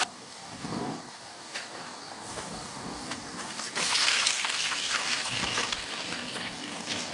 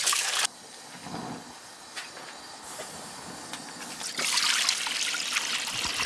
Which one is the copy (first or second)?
first